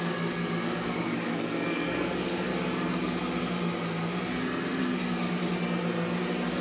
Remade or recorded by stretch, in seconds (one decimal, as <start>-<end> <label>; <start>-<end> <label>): 0.0-2.5 remade; 2.5-4.8 recorded; 4.8-5.5 remade; 5.5-6.6 recorded